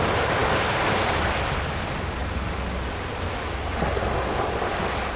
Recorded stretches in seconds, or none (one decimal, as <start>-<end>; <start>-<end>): 0.0-0.4; 1.7-2.2; 3.5-5.2